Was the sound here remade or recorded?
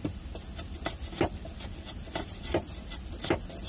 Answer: recorded